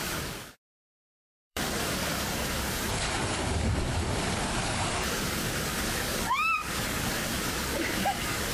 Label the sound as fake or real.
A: fake